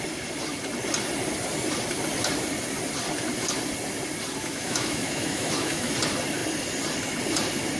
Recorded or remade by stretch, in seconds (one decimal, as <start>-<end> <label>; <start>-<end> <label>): 0.0-4.4 recorded; 4.4-5.9 remade; 5.9-7.8 recorded